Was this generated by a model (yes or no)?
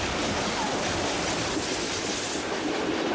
no